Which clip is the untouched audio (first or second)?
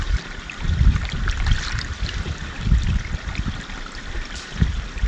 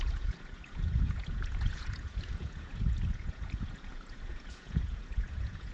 first